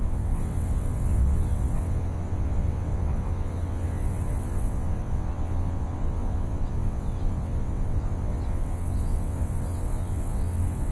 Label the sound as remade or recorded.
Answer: remade